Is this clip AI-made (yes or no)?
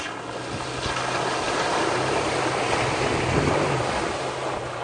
no